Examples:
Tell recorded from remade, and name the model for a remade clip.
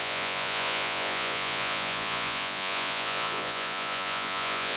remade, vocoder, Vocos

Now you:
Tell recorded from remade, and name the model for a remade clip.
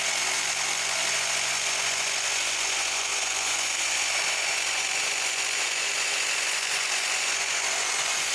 remade, vocoder, Vocos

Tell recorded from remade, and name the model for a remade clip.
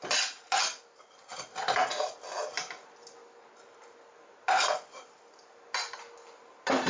recorded